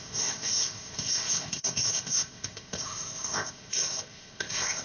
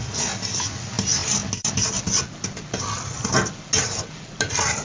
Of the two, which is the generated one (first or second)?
first